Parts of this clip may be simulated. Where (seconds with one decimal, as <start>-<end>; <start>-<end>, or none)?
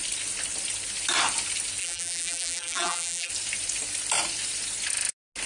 1.8-3.3